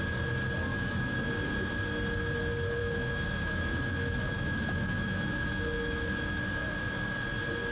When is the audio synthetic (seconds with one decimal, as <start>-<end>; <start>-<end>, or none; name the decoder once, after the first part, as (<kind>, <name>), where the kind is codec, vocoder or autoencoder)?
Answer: 0.7-1.3 (autoencoder, DAC-VAE); 2.8-6.7